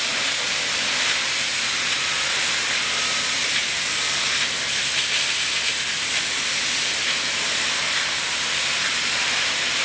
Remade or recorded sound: recorded